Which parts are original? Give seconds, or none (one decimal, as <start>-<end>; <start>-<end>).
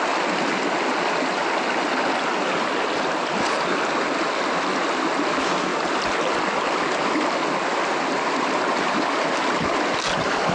0.0-10.5